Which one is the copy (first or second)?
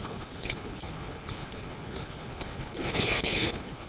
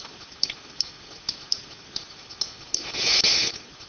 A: first